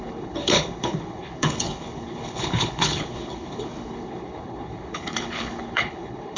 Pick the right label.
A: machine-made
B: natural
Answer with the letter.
A